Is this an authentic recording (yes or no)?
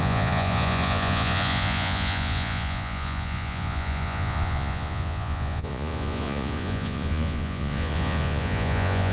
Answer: no